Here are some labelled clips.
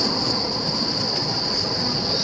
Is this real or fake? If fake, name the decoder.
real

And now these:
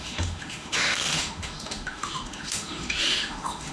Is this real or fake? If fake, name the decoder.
fake, autoencoder, DAC-VAE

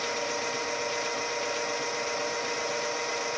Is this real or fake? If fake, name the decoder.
real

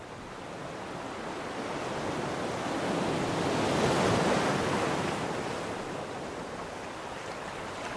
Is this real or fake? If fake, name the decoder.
real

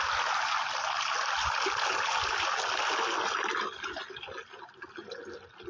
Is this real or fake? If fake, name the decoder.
real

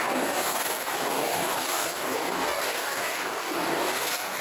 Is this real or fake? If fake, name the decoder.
fake, codec, DAC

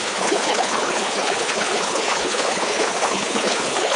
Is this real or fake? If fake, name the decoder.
fake, codec, HILCodec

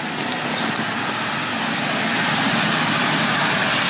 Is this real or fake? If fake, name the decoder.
real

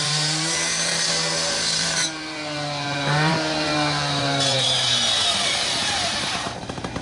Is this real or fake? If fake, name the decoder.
fake, vocoder, BigVGAN v2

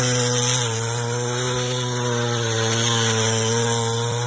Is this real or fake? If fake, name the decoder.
real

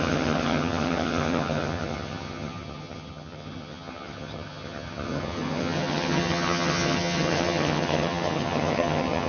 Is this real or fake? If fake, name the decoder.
fake, vocoder, HiFi-GAN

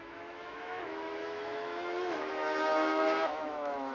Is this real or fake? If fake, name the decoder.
fake, autoencoder, DAC-VAE